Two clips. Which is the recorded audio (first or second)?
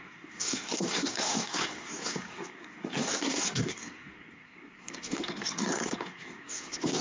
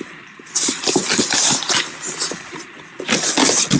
second